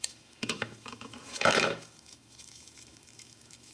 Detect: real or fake fake